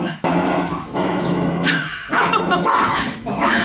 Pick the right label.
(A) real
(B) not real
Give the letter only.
B